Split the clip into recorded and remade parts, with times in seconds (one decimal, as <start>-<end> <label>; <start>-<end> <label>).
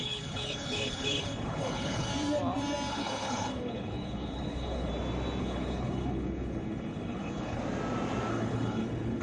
0.0-2.1 remade; 2.1-2.9 recorded; 2.9-4.9 remade; 4.9-5.4 recorded; 5.4-7.6 remade; 7.6-8.3 recorded; 8.3-9.2 remade